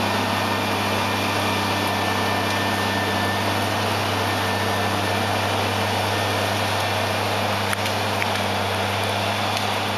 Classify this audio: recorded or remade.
recorded